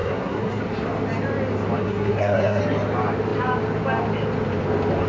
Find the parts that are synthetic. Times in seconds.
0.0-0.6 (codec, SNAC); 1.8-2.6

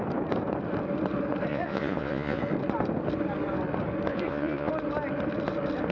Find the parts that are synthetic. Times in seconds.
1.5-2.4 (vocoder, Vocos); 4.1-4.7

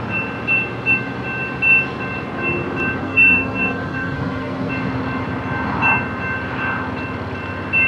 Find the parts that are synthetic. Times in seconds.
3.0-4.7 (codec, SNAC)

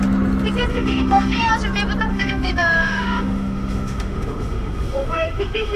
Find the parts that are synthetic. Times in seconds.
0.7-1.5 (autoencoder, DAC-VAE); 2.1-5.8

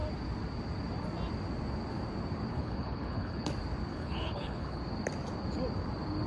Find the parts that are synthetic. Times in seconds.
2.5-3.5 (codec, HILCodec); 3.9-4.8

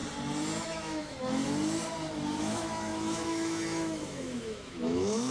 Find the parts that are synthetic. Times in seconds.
0.6-1.4 (autoencoder, DAC-VAE); 2.4-5.3

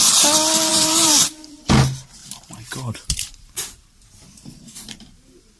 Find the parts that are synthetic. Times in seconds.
0.7-1.5 (vocoder, BigVGAN v2); 2.2-5.6

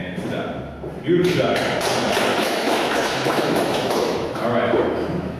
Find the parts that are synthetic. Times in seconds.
2.3-5.4 (autoencoder, DAC-VAE)